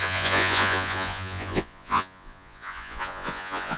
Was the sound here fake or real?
fake